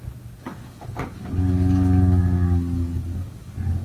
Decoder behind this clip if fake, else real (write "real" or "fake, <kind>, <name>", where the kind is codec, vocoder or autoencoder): fake, codec, DAC